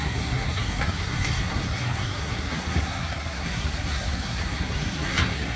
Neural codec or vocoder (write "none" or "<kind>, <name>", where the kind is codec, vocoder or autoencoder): codec, SNAC